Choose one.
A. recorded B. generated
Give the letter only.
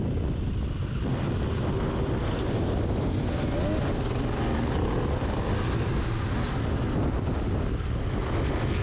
A